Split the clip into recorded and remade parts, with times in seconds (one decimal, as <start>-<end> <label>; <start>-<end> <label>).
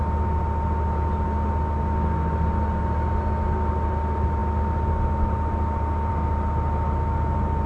0.0-7.7 recorded